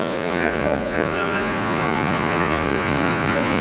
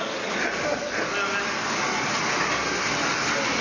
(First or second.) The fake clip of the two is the first